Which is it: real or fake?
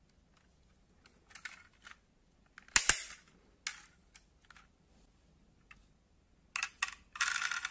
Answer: real